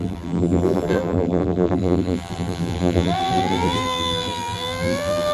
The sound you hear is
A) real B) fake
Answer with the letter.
B